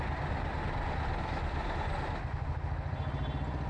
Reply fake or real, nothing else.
real